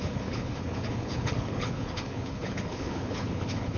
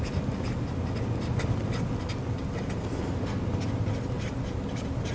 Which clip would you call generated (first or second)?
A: first